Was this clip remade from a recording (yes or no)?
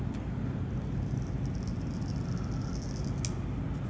no